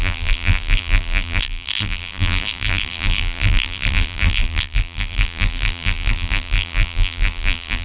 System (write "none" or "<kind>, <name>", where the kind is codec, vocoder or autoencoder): vocoder, BigVGAN v2